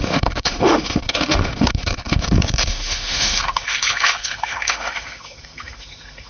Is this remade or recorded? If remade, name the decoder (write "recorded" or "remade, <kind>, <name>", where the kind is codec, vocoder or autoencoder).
remade, autoencoder, DAC-VAE